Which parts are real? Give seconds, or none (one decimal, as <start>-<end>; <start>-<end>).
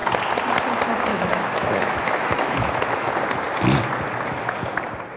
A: 0.0-1.1; 3.1-5.2